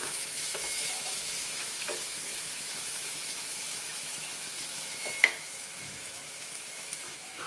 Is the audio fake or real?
fake